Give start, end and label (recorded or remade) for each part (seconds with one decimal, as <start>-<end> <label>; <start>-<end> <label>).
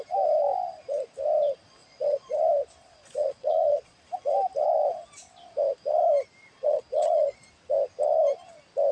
0.0-1.8 recorded; 1.8-2.4 remade; 2.4-2.8 recorded; 2.8-3.9 remade; 3.9-6.6 recorded; 6.6-7.4 remade; 7.4-8.9 recorded